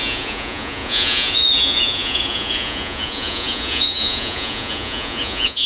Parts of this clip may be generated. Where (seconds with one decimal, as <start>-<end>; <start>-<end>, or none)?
0.0-5.7